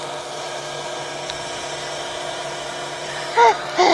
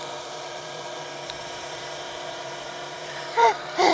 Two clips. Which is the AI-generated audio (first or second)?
second